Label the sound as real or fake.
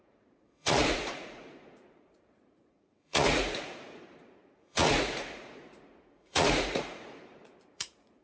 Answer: fake